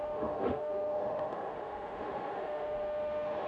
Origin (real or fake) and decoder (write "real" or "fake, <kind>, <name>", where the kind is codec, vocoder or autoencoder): fake, autoencoder, DAC-VAE